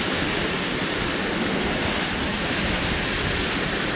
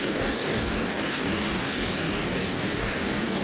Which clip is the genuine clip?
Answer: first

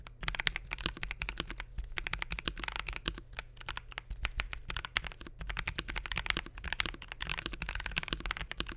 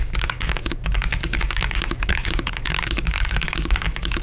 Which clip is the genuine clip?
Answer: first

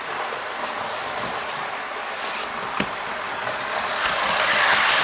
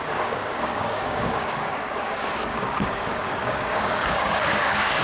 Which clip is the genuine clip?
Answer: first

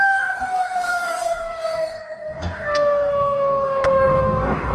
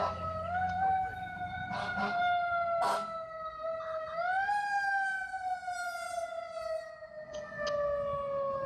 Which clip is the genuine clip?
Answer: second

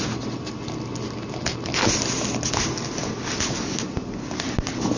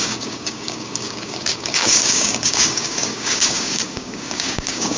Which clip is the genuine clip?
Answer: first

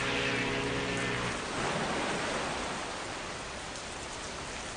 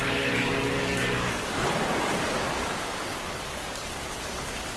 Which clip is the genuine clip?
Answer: first